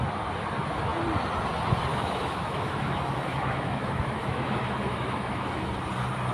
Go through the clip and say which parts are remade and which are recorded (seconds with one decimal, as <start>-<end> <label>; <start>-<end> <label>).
0.0-1.9 recorded; 1.9-5.7 remade; 5.7-6.3 recorded